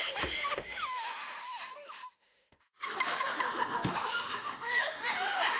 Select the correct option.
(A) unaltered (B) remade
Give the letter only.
B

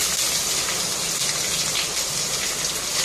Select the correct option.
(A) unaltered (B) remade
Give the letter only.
A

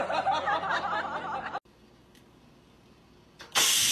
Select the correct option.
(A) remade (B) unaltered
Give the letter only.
B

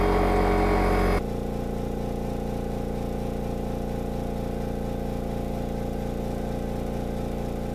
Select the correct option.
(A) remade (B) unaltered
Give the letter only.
B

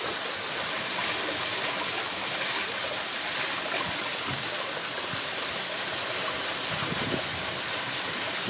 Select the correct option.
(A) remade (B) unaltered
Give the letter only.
B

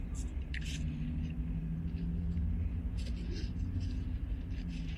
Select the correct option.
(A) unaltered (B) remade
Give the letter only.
A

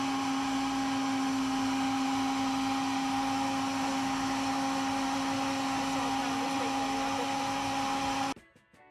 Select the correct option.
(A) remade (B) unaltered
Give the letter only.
B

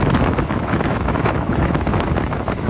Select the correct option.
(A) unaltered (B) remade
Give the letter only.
B